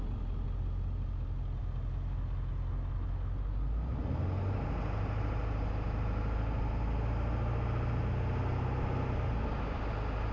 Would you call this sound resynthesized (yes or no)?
no